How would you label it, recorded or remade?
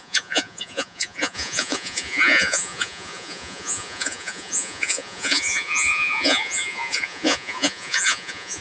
remade